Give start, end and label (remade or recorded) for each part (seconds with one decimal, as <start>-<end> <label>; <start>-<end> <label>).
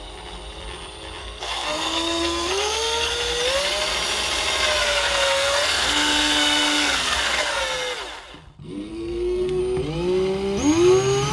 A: 0.0-1.2 recorded; 1.2-3.1 remade; 3.1-4.8 recorded; 4.8-7.6 remade; 7.6-8.6 recorded; 8.6-9.6 remade; 9.6-11.3 recorded